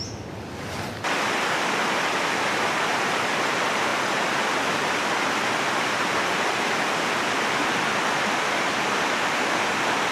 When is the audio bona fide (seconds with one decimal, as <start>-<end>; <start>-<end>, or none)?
0.0-10.1